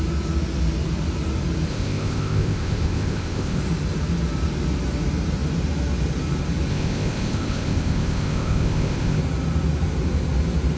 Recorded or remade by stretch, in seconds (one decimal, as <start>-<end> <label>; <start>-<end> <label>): 0.0-1.7 recorded; 1.7-3.6 remade; 3.6-6.7 recorded; 6.7-9.2 remade; 9.2-10.8 recorded